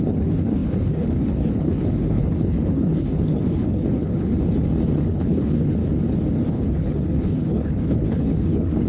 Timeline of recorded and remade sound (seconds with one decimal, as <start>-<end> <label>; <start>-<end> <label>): 0.0-4.3 remade; 4.3-5.0 recorded; 5.0-5.8 remade; 5.8-6.5 recorded; 6.5-8.9 remade